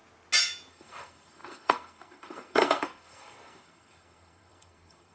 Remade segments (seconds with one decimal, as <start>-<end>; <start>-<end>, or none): 0.7-5.1